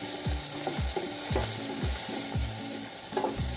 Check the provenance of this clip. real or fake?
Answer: real